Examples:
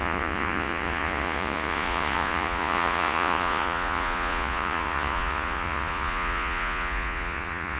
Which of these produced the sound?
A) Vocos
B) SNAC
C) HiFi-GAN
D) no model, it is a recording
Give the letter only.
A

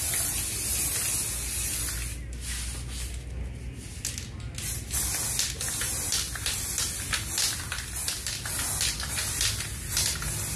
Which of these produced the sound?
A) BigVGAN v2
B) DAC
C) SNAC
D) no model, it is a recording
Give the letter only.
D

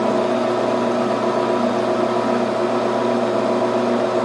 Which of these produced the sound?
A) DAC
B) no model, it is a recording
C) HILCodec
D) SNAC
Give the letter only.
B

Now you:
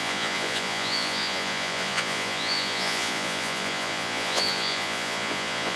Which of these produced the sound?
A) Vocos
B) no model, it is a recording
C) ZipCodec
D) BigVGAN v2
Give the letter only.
A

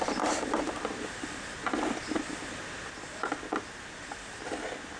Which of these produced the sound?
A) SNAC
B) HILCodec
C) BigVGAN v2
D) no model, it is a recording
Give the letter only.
D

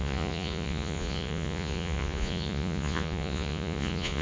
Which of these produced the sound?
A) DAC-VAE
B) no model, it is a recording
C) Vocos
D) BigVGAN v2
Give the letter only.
C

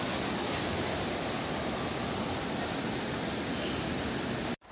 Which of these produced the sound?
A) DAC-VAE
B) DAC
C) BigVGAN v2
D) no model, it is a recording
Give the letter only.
D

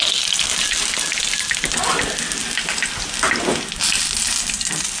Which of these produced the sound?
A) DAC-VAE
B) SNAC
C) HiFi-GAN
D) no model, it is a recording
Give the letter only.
D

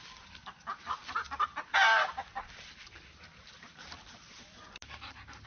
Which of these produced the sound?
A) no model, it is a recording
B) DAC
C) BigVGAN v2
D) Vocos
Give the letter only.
A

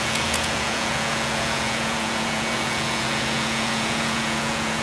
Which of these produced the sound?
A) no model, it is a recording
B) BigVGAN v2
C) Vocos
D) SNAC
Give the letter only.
C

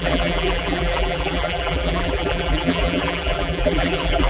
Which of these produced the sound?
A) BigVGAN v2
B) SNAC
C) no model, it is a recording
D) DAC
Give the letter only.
A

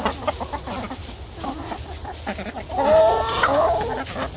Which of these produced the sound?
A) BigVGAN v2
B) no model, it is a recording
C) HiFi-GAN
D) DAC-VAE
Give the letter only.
B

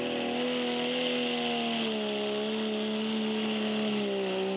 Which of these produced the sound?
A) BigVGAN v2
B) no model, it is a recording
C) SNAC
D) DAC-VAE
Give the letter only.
B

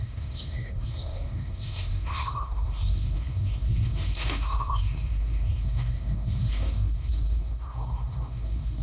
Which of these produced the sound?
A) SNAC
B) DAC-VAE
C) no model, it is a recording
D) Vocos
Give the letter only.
A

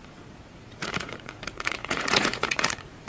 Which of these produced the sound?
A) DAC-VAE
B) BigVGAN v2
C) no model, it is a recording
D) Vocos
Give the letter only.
D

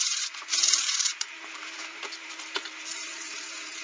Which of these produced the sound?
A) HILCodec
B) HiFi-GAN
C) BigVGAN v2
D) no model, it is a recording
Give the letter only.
C